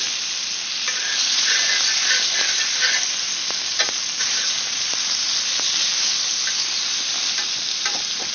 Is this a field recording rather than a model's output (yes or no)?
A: yes